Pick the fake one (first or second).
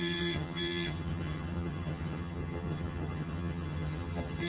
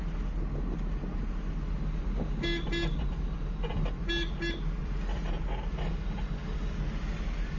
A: first